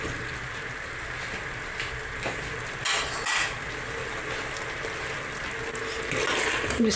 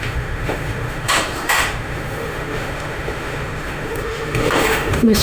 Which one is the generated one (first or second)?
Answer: second